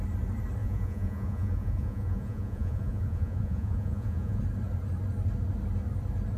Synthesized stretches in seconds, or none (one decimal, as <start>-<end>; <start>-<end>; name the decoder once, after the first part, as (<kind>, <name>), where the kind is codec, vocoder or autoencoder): 0.6-4.4 (vocoder, Vocos)

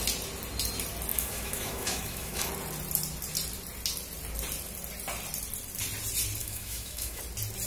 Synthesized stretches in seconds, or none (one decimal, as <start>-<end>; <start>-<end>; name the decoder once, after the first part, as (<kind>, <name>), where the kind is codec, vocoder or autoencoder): 1.1-2.5 (autoencoder, DAC-VAE); 6.4-7.2

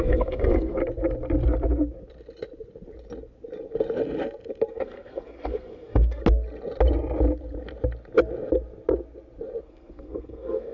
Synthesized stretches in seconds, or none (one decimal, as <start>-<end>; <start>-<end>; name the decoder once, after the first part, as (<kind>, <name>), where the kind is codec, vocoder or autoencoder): 0.0-0.8 (codec, SNAC); 4.7-6.2; 9.6-10.7

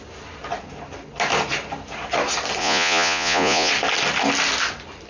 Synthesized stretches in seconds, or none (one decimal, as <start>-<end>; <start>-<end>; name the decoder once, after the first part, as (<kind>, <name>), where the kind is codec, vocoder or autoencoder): 2.6-3.7 (vocoder, Vocos)

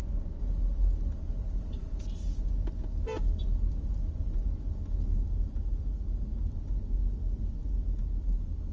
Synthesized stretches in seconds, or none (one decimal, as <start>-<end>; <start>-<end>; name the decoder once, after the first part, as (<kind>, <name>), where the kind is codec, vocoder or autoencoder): none